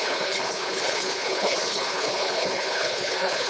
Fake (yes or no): yes